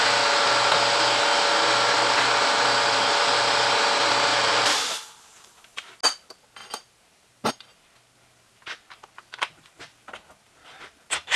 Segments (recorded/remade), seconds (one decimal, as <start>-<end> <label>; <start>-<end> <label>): 0.0-4.3 recorded; 4.3-5.5 remade; 5.5-6.6 recorded; 6.6-7.5 remade; 7.5-11.4 recorded